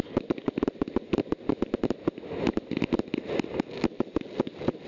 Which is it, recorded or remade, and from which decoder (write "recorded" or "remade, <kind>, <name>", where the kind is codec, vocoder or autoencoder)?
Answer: recorded